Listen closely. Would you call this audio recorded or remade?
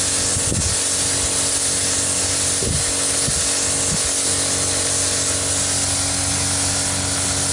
recorded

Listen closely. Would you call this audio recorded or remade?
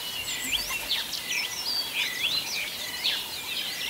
recorded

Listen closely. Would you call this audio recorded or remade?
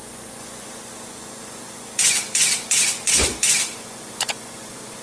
remade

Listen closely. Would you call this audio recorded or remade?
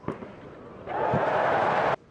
recorded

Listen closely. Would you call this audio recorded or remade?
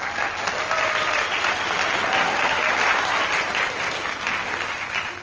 recorded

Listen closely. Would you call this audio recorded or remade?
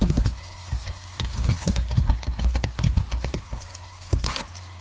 remade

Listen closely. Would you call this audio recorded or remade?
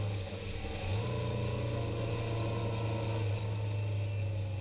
recorded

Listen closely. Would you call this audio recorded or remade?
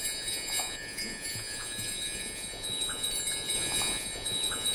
remade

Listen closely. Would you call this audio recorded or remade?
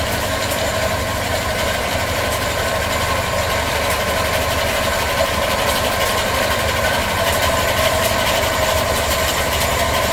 remade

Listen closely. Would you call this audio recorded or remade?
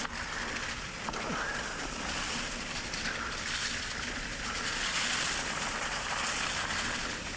recorded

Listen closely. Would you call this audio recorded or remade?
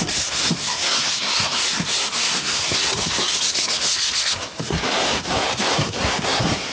remade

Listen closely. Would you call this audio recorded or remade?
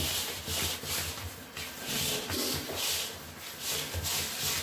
recorded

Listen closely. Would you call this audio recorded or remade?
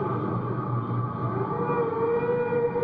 recorded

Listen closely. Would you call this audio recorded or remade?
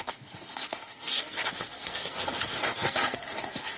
remade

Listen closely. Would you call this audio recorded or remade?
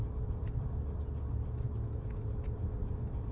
recorded